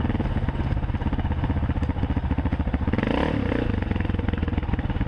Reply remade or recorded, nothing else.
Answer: recorded